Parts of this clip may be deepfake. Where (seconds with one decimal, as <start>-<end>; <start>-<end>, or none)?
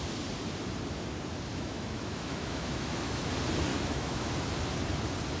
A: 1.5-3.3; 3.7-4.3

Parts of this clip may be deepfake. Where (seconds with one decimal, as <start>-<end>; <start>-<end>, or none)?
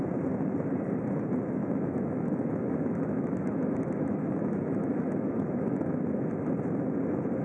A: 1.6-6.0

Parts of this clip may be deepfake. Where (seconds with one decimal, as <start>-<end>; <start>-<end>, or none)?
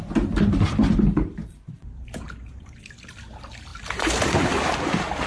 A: 0.8-2.8; 3.7-4.2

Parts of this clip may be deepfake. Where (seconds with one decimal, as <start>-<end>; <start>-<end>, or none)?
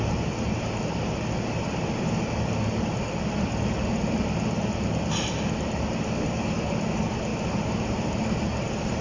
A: none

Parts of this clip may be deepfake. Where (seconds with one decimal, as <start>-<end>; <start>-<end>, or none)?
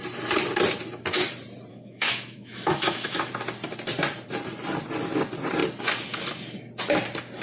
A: 1.7-3.3